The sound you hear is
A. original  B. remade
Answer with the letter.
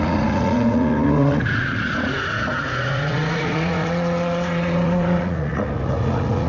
B